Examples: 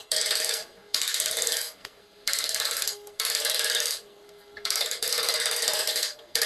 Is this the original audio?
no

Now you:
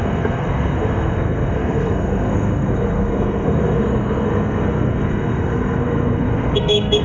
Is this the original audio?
no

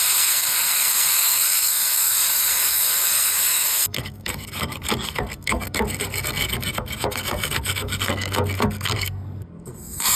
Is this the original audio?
no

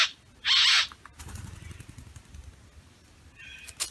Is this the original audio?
yes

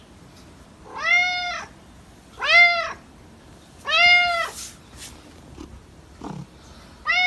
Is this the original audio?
yes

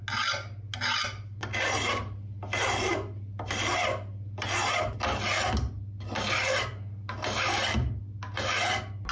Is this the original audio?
yes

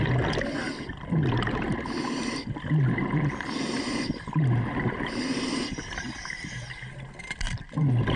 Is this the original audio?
yes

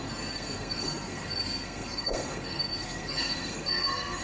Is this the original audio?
no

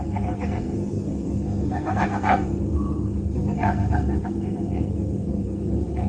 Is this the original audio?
no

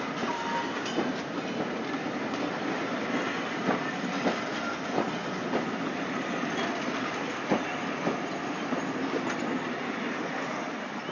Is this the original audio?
yes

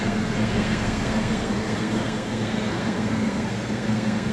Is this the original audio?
no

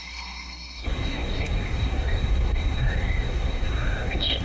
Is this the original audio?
no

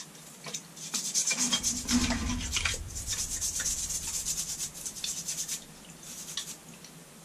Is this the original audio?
yes